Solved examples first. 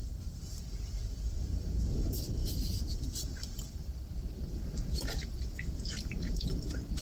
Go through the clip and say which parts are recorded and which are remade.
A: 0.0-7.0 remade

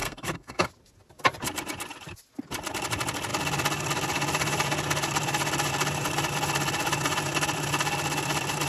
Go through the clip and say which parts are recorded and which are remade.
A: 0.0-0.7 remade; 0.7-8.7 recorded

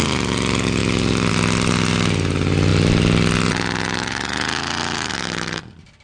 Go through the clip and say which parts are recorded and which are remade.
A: 0.0-6.0 recorded

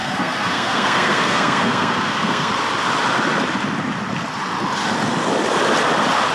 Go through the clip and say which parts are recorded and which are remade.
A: 0.0-2.5 remade; 2.5-6.3 recorded